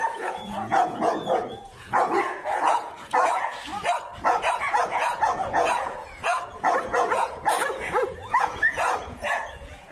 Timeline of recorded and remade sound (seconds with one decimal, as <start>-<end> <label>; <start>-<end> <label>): 0.0-3.7 remade; 3.7-4.2 recorded; 4.2-9.9 remade